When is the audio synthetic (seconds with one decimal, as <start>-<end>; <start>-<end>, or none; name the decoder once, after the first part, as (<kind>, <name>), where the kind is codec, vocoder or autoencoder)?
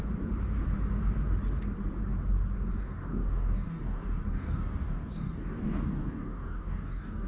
2.8-7.3 (codec, DAC)